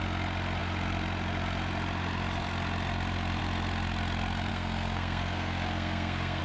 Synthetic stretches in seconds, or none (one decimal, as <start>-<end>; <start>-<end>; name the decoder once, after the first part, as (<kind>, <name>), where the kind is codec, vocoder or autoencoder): 4.5-6.4 (codec, SNAC)